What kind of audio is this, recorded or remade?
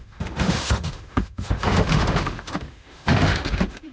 remade